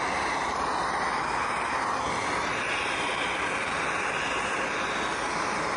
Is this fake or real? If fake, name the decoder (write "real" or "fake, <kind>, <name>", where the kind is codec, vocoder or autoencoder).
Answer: real